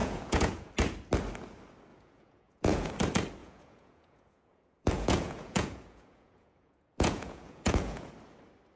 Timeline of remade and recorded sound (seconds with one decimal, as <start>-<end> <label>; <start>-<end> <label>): 0.0-0.7 remade; 0.7-1.9 recorded; 1.9-2.9 remade; 2.9-3.4 recorded; 3.4-8.1 remade; 8.1-8.8 recorded